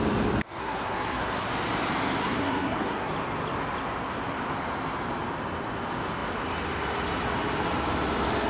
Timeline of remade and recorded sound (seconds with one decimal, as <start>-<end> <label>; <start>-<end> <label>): 0.0-0.6 recorded; 0.6-1.5 remade; 1.5-2.2 recorded; 2.2-3.1 remade; 3.1-8.5 recorded